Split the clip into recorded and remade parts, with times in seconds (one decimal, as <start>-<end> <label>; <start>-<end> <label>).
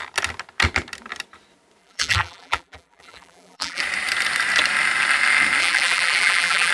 0.0-1.8 recorded; 1.8-3.8 remade; 3.8-5.6 recorded; 5.6-6.7 remade